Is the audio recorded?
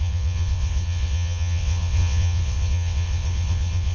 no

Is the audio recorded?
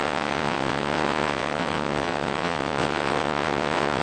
no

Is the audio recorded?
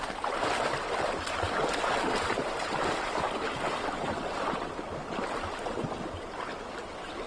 yes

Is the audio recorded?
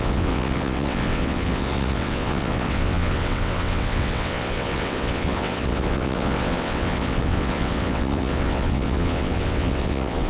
no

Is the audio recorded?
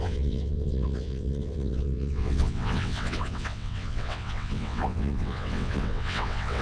no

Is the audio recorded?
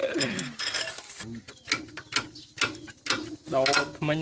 yes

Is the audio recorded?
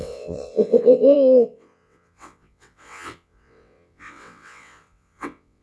no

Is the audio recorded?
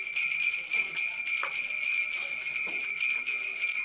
yes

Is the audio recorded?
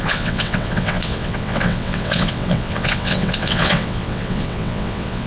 no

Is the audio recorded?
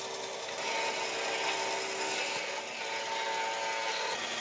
yes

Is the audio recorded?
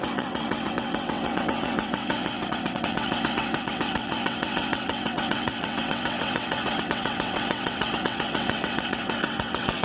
no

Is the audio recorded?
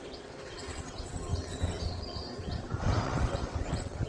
no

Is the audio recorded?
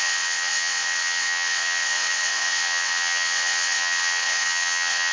no